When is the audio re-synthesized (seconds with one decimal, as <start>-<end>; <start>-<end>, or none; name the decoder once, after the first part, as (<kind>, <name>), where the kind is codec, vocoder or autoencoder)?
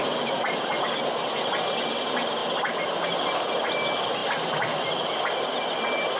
none